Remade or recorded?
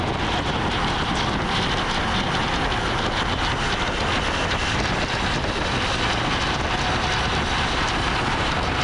recorded